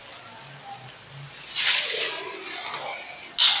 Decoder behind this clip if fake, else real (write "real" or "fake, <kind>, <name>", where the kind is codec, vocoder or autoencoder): real